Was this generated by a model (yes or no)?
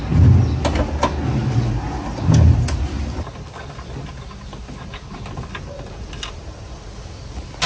no